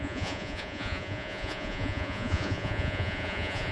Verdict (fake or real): fake